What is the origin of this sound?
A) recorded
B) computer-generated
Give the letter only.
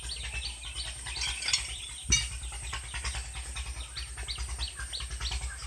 A